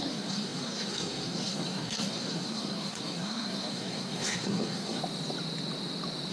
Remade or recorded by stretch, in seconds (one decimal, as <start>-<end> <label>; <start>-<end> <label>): 0.0-5.0 remade; 5.0-6.3 recorded